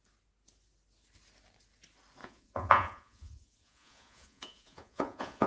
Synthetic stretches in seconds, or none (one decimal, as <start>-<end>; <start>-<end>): 2.2-5.5